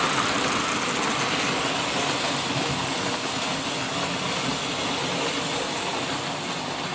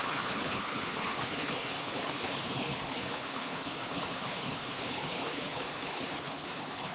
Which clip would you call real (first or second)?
first